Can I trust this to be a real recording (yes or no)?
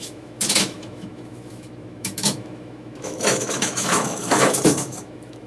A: no